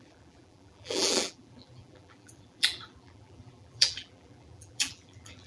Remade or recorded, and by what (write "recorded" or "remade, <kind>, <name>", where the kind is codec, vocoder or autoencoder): remade, vocoder, BigVGAN v2